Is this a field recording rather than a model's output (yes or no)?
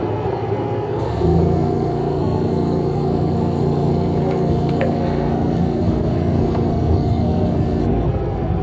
no